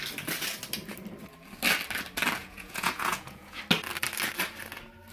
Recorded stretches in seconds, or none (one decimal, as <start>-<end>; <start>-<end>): 0.0-2.4; 3.6-5.1